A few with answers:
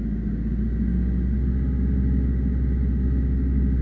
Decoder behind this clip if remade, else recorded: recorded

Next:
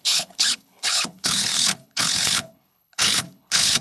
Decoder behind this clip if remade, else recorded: remade, codec, HILCodec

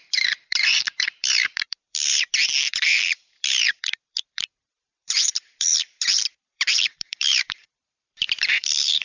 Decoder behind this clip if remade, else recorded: remade, vocoder, BigVGAN v2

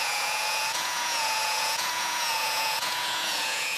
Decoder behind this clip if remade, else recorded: remade, vocoder, Vocos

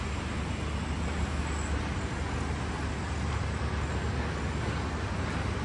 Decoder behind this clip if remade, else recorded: recorded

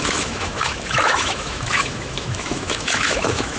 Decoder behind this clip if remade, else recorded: remade, autoencoder, DAC-VAE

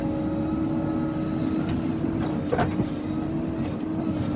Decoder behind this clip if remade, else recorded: recorded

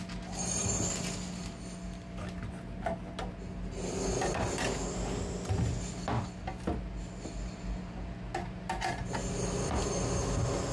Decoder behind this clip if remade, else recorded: recorded